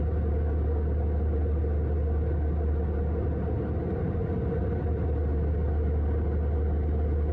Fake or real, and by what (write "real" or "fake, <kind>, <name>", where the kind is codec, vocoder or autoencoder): real